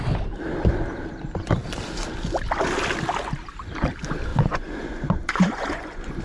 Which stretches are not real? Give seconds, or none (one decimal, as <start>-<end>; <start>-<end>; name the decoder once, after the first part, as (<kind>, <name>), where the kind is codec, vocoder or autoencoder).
4.3-6.2 (vocoder, Vocos)